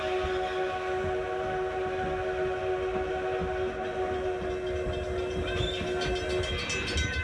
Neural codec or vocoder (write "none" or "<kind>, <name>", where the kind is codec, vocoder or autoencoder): none